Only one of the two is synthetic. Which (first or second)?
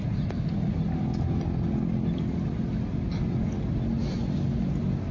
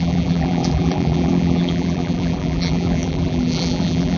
second